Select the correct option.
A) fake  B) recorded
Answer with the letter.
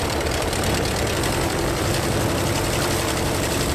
A